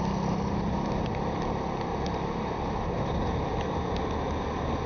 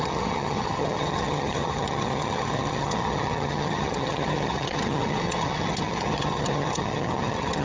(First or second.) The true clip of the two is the first